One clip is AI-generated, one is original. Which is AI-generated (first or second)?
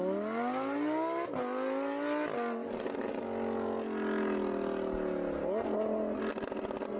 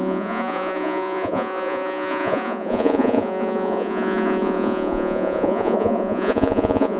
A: second